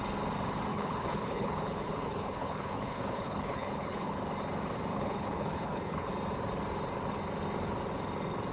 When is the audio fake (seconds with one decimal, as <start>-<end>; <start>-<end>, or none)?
0.7-4.1; 4.9-6.1